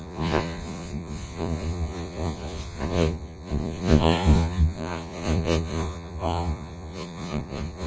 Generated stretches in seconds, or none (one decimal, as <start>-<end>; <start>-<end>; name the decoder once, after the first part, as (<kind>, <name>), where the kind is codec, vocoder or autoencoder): 0.0-7.9 (vocoder, Vocos)